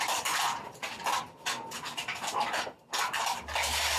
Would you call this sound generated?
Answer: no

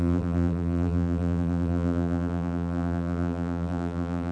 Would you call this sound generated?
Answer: yes